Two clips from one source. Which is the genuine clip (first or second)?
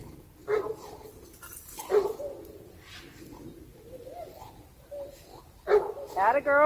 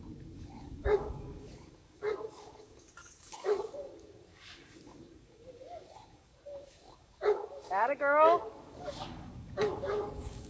first